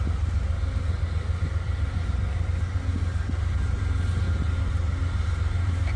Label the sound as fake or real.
real